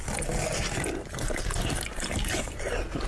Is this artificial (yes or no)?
no